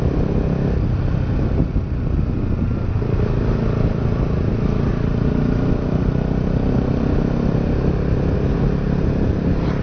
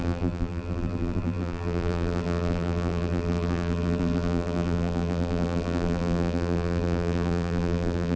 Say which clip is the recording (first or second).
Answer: first